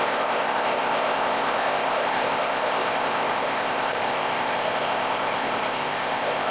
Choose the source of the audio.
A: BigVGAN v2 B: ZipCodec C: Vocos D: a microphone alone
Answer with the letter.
B